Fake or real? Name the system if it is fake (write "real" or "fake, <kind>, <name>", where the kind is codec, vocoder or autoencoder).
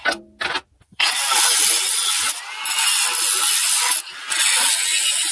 real